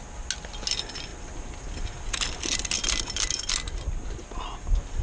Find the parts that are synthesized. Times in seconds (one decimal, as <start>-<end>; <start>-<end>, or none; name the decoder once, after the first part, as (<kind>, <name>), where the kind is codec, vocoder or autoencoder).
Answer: none